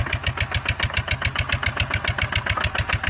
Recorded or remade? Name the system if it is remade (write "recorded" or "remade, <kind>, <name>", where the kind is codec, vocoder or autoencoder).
recorded